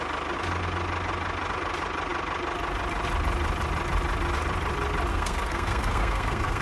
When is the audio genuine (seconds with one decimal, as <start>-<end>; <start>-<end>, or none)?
0.0-5.1